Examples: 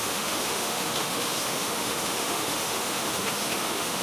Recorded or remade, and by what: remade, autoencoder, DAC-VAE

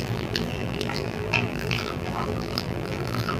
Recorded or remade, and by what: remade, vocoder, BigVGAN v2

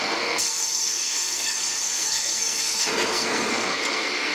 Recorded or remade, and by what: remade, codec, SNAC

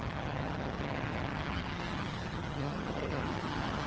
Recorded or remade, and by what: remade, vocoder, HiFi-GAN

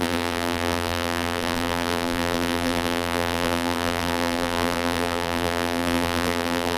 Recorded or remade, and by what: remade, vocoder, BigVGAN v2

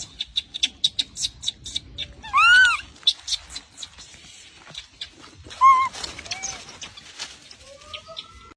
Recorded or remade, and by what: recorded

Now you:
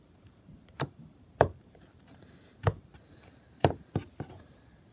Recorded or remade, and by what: remade, vocoder, BigVGAN v2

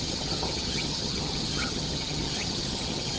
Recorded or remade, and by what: remade, vocoder, HiFi-GAN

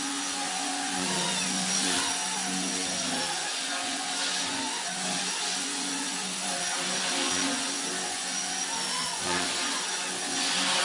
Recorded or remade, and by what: remade, vocoder, Vocos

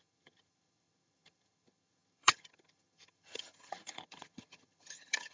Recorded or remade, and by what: remade, vocoder, HiFi-GAN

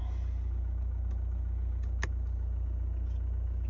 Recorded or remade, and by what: recorded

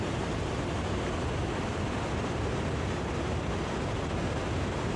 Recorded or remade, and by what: recorded